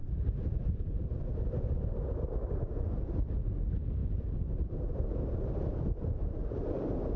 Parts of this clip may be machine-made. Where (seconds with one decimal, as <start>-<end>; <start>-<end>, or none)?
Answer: 0.0-1.5; 4.0-4.8